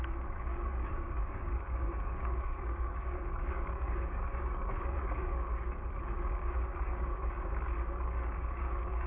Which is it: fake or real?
fake